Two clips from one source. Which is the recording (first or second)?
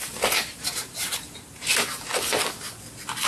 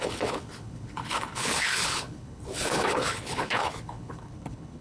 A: first